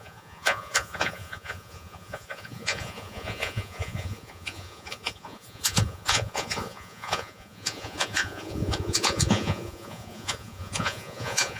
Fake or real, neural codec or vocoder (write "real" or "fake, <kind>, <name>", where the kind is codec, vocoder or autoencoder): fake, vocoder, Vocos